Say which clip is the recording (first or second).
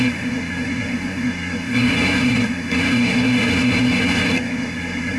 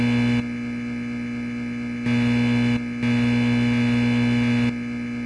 second